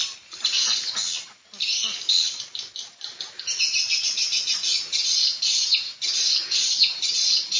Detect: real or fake real